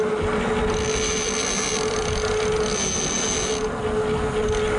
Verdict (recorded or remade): recorded